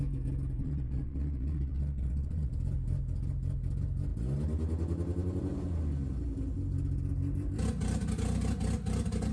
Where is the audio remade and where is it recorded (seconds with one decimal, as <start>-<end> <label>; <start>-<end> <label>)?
0.0-0.6 recorded; 0.6-2.5 remade; 2.5-9.3 recorded